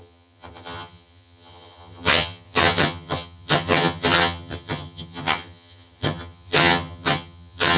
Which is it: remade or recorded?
remade